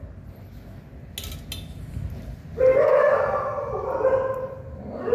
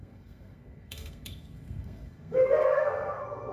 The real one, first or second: first